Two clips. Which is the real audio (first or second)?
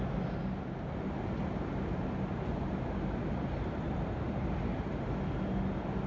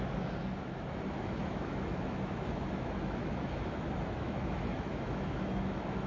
first